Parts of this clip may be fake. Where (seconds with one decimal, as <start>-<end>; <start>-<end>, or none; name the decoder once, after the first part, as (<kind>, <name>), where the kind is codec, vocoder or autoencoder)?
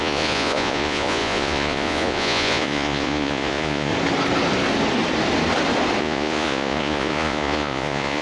0.0-3.9 (vocoder, Vocos); 6.0-8.2